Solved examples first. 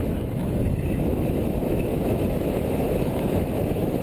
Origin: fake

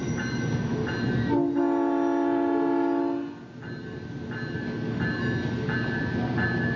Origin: real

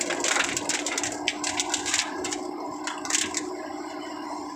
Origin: real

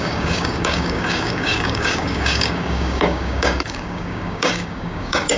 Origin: fake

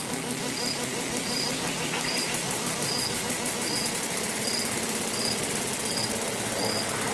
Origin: real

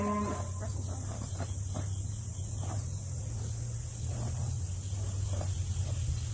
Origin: real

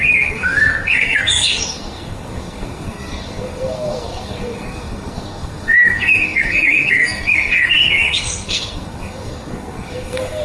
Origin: fake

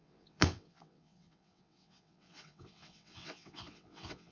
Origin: fake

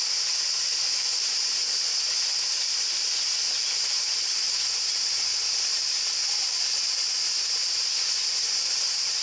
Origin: real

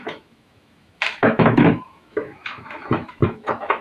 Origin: fake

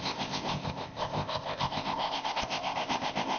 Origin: fake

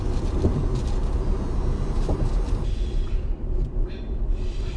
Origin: fake